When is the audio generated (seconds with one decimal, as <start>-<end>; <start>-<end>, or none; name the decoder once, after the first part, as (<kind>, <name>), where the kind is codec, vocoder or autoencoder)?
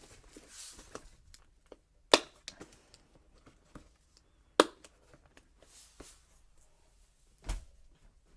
none